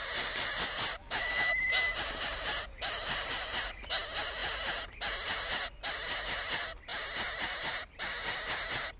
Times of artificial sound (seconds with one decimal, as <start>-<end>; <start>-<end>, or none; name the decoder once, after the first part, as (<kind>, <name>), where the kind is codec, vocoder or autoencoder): 1.0-1.7 (autoencoder, DAC-VAE)